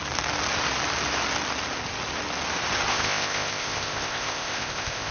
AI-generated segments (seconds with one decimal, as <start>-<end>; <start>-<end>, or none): 2.9-5.1